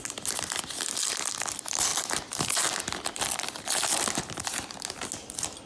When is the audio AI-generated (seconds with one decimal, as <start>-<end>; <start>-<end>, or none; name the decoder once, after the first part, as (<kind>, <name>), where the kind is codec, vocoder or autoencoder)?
none